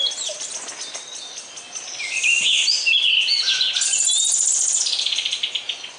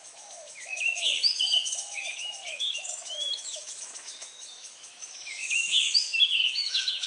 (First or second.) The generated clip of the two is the second